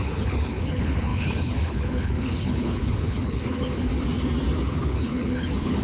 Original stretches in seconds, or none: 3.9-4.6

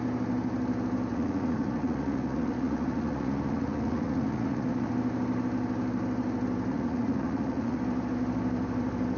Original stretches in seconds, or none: 0.0-1.1; 4.9-6.7; 7.8-9.2

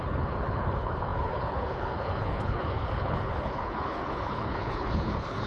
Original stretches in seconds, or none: none